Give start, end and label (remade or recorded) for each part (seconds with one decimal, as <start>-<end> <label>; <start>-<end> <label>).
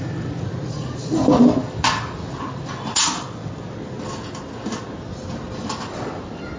0.0-6.6 recorded